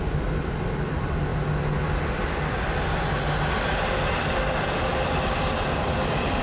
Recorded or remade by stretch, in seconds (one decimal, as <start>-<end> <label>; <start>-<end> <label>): 0.0-6.4 recorded